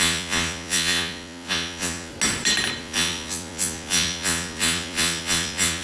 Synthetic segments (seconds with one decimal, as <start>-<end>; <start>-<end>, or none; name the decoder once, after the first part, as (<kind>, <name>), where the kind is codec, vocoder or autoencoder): 0.0-2.1 (vocoder, Vocos); 2.8-5.8